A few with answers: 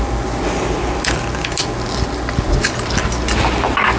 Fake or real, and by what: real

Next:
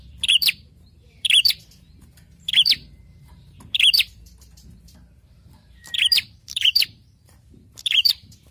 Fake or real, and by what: fake, vocoder, BigVGAN v2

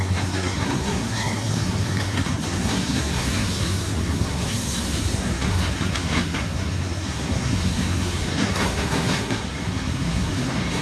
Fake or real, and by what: fake, codec, SNAC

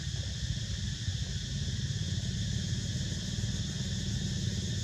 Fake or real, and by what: real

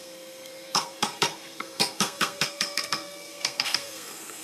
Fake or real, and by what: fake, codec, SNAC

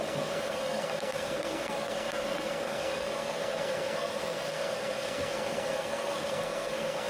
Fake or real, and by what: fake, codec, SNAC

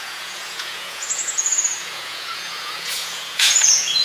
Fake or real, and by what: fake, vocoder, Vocos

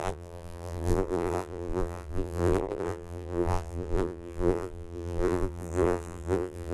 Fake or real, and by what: fake, vocoder, BigVGAN v2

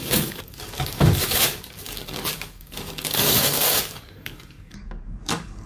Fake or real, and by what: fake, codec, DAC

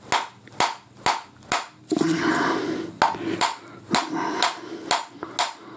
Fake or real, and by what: real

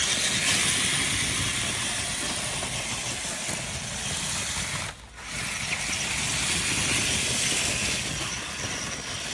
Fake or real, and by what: real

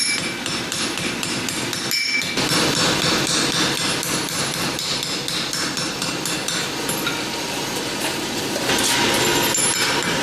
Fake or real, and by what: real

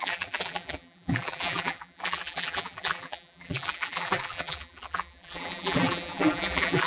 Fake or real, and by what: fake, vocoder, BigVGAN v2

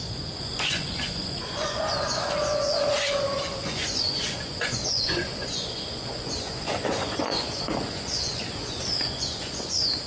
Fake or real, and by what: fake, vocoder, Vocos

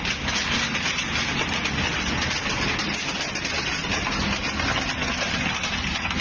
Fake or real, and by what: real